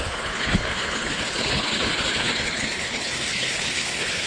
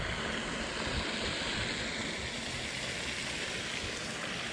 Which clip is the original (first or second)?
second